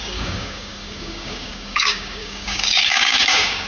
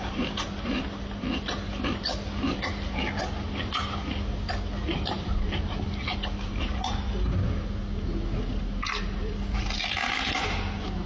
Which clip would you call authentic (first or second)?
second